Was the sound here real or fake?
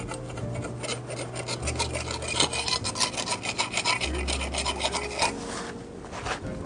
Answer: real